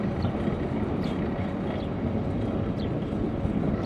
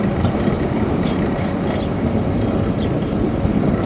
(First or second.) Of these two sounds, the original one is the first